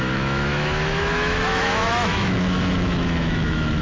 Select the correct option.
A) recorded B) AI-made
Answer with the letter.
B